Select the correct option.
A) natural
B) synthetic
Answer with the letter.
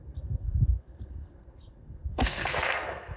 B